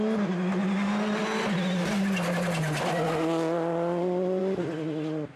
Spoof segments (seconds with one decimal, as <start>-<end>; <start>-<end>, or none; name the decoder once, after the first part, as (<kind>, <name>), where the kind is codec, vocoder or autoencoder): none